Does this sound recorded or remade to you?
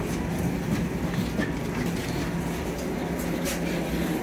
recorded